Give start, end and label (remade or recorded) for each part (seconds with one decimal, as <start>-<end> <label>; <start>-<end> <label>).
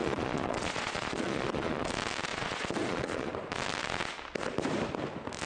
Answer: 0.0-1.9 remade; 1.9-2.3 recorded; 2.3-3.3 remade; 3.3-5.5 recorded